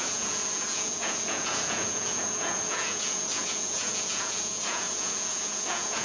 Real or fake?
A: fake